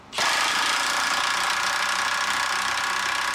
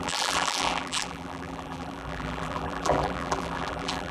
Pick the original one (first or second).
first